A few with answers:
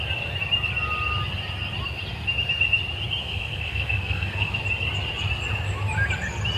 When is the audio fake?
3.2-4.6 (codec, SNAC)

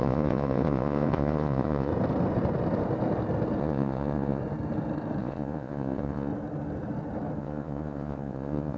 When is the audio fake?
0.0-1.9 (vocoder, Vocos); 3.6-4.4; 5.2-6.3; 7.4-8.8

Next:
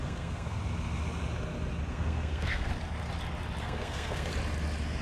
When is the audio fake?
0.0-0.6 (codec, SNAC); 1.9-2.7; 3.6-4.3

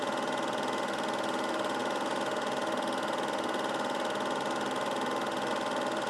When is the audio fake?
none

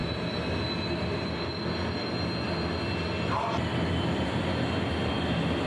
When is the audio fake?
none